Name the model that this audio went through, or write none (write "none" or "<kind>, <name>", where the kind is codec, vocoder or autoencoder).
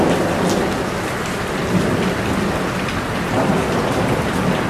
none